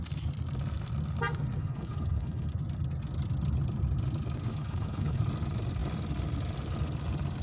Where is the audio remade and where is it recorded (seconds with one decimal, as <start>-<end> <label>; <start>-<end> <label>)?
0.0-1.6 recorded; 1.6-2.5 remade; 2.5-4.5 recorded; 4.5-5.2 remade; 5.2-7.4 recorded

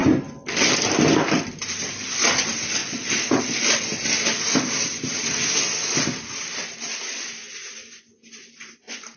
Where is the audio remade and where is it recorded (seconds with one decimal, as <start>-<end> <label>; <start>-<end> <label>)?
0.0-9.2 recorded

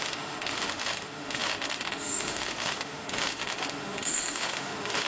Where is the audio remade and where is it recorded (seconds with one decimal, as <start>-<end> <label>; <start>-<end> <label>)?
0.0-5.1 remade

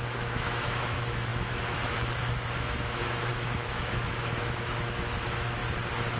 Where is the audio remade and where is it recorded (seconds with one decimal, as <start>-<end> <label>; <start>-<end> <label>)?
0.0-5.6 remade; 5.6-6.2 recorded

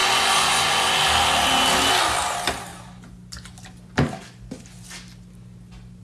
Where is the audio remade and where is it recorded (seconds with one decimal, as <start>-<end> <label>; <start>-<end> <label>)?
0.0-1.0 remade; 1.0-6.0 recorded